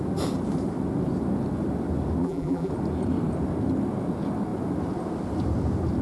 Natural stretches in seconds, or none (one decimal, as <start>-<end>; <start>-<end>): 0.0-2.2; 2.7-6.0

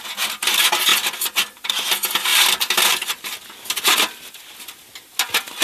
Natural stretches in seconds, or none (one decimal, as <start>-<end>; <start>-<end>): 0.0-5.6

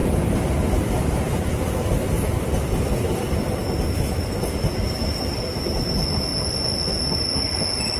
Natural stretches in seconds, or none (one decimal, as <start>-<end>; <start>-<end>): 2.0-3.1; 6.3-8.0

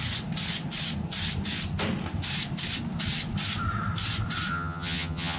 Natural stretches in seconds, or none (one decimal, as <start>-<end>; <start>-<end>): 0.0-4.5

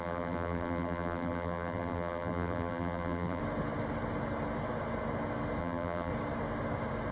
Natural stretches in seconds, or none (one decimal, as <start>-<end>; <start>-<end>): 3.4-5.6; 6.1-7.1

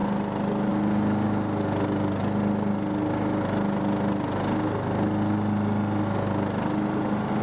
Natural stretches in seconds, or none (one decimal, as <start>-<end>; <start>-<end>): 0.0-7.4

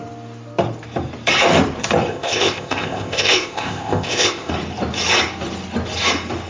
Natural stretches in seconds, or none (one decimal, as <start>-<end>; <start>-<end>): 0.0-2.1; 4.5-6.5

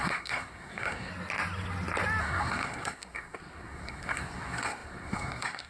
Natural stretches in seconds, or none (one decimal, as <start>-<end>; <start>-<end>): 1.1-2.2